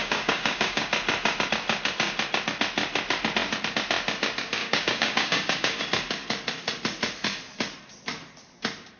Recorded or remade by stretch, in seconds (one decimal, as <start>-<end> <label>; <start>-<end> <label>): 0.0-0.9 remade; 0.9-4.6 recorded; 4.6-5.8 remade; 5.8-9.0 recorded